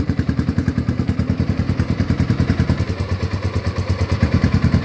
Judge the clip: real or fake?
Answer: fake